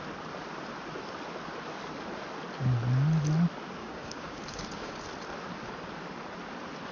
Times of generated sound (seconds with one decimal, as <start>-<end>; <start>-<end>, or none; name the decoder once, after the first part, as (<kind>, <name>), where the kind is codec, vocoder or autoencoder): 3.8-5.0 (codec, DAC)